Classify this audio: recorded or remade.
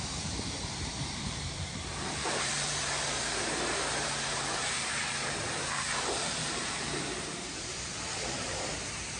remade